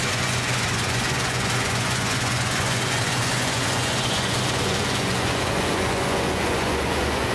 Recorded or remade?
remade